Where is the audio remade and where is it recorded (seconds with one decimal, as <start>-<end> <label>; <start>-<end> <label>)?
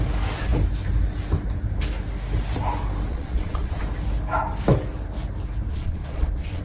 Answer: 0.0-3.1 recorded; 3.1-3.8 remade; 3.8-5.7 recorded; 5.7-6.6 remade